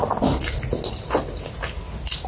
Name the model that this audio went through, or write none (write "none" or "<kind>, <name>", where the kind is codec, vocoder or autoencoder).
none